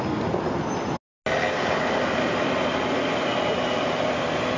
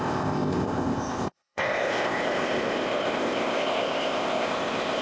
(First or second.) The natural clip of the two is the first